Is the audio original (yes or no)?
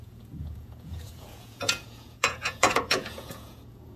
no